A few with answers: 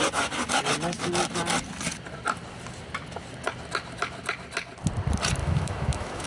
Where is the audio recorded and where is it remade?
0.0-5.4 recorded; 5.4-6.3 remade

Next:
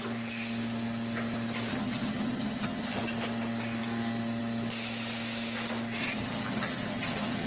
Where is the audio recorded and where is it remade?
0.0-1.7 recorded; 1.7-3.0 remade; 3.0-6.0 recorded; 6.0-7.5 remade

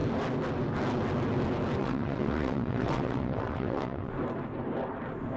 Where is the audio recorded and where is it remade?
0.0-1.8 recorded; 1.8-4.1 remade; 4.1-5.4 recorded

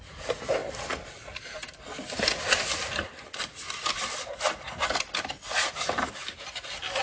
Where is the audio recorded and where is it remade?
0.0-7.0 recorded